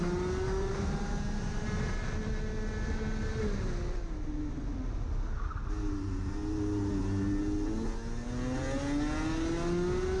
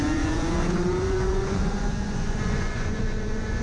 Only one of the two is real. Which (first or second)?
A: first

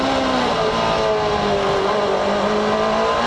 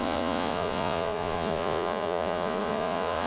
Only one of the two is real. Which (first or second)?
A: first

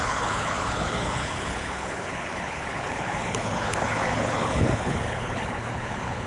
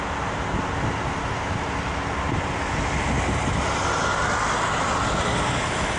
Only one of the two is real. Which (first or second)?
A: second